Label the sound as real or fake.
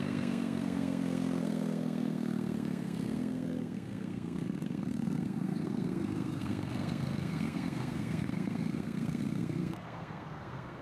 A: fake